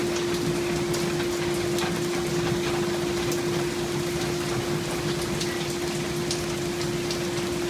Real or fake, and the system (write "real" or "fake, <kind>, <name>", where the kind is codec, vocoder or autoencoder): real